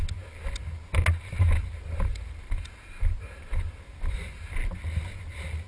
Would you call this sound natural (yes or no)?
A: yes